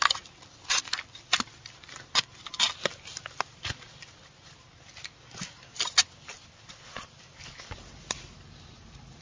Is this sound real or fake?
real